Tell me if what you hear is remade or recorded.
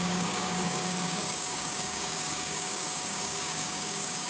remade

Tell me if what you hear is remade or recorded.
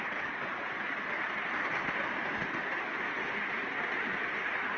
recorded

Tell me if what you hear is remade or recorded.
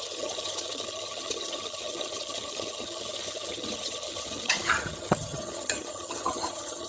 remade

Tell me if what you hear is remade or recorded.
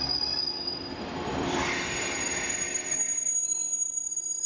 remade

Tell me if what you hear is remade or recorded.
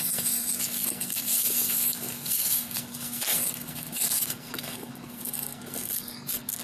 remade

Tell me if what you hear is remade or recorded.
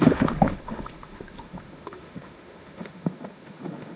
remade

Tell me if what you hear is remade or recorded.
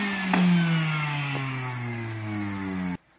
recorded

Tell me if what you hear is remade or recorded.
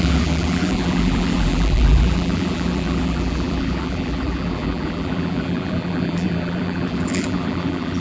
remade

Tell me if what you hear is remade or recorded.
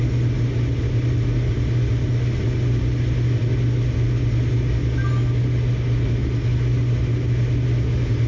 recorded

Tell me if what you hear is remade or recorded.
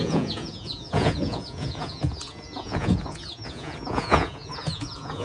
remade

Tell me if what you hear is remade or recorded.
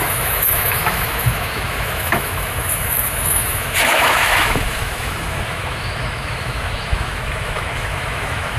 remade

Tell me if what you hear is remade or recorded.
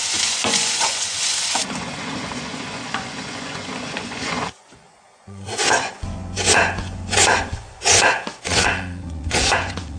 remade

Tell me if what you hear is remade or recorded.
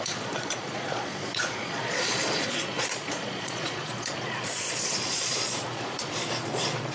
remade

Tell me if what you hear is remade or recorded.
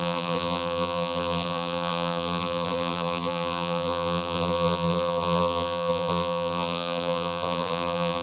remade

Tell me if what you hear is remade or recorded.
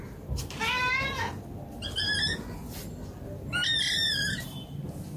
recorded